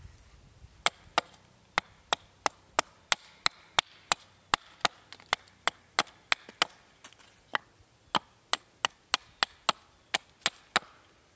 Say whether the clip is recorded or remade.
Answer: recorded